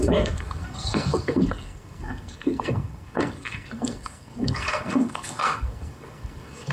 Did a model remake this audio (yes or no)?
yes